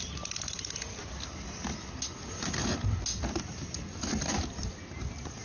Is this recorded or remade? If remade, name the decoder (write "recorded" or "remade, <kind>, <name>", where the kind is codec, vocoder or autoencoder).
recorded